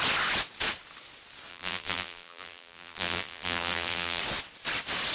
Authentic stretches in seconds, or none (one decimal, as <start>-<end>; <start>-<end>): 0.0-1.5; 4.2-5.1